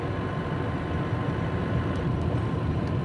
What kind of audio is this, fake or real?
real